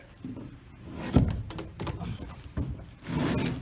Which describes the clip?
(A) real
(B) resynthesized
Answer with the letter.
A